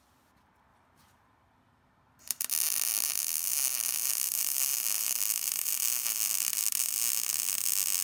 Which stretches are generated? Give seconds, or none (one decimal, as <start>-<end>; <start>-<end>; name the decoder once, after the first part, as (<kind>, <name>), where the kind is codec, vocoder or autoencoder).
0.7-2.5 (vocoder, BigVGAN v2); 4.7-7.0